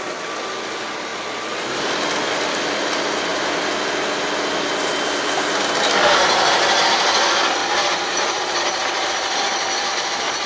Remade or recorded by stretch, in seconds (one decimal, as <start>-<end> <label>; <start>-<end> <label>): 0.0-7.6 recorded; 7.6-8.6 remade; 8.6-10.5 recorded